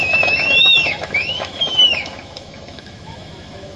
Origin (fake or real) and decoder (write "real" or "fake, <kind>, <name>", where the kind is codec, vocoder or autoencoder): fake, autoencoder, DAC-VAE